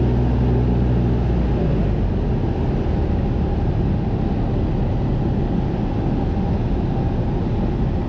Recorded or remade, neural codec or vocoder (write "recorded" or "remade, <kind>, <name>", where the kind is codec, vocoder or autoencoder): recorded